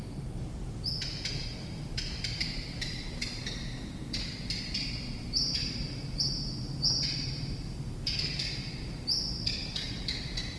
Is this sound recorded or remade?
remade